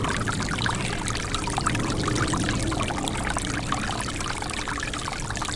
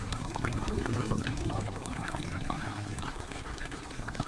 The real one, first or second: first